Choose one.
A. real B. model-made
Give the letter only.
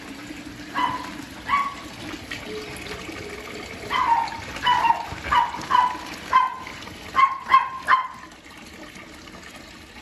A